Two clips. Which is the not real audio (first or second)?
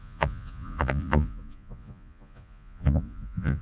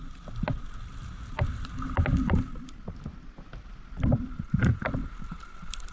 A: first